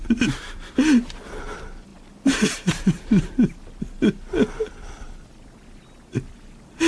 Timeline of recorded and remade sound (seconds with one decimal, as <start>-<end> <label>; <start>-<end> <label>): 0.0-6.9 recorded

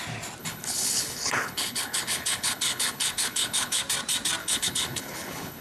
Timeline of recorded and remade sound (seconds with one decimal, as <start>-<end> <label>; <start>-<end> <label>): 0.0-0.4 recorded; 0.4-3.8 remade; 3.8-4.4 recorded; 4.4-5.6 remade

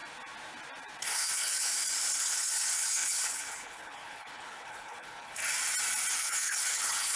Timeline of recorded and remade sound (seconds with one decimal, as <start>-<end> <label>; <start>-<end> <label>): 0.0-1.0 recorded; 1.0-1.7 remade; 1.7-2.2 recorded; 2.2-5.4 remade; 5.4-6.2 recorded; 6.2-7.2 remade

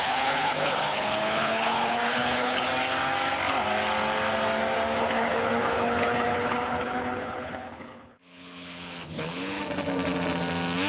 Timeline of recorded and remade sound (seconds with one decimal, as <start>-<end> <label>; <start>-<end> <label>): 0.0-2.7 remade; 2.7-5.0 recorded; 5.0-9.6 remade; 9.6-10.9 recorded

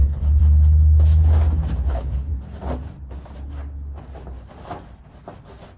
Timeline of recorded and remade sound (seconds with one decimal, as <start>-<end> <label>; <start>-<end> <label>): 0.0-0.4 remade; 0.4-1.9 recorded; 1.9-2.3 remade; 2.3-5.8 recorded

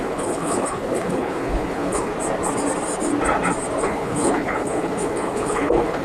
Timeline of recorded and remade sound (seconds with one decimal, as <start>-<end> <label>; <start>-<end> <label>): 0.0-2.1 remade; 2.1-3.8 recorded; 3.8-6.0 remade